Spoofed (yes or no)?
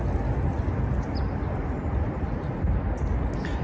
no